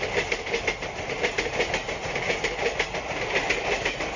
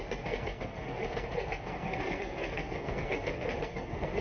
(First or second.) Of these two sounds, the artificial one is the second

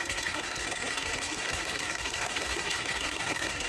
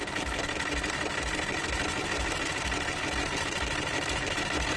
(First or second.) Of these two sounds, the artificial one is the first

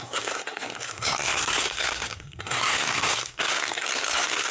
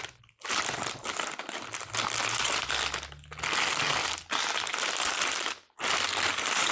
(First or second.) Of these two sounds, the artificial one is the first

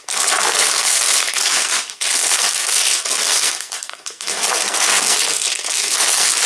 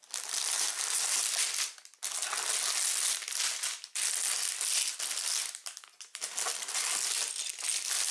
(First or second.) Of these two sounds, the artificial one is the first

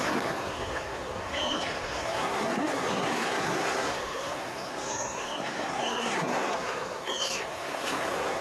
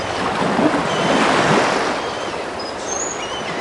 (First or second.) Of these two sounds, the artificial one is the first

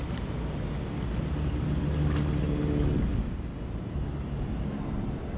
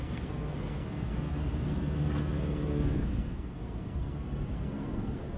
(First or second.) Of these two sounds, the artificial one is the second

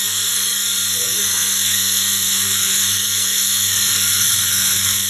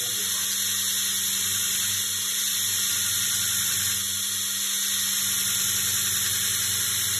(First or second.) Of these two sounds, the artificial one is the first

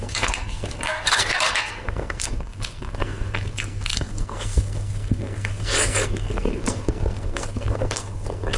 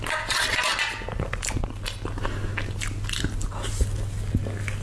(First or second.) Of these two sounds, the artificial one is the first